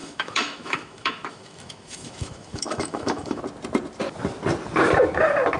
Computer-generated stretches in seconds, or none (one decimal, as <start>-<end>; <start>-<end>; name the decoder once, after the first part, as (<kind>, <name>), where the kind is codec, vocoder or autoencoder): 0.0-3.4 (autoencoder, DAC-VAE)